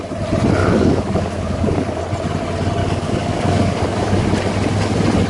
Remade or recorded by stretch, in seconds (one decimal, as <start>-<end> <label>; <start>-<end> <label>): 0.0-0.6 recorded; 0.6-2.0 remade; 2.0-2.8 recorded; 2.8-4.3 remade; 4.3-5.3 recorded